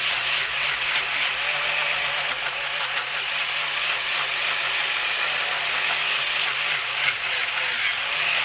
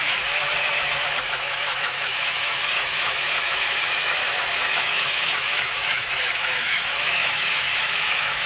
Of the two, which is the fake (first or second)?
second